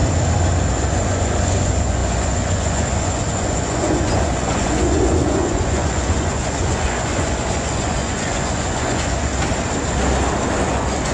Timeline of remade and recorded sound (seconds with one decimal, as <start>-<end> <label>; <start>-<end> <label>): 0.0-0.7 recorded; 0.7-9.3 remade; 9.3-10.6 recorded; 10.6-11.1 remade